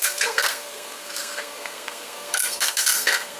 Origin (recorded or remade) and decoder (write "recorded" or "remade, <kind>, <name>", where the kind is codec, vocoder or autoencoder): remade, codec, SNAC